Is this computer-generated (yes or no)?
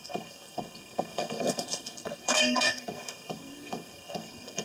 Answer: yes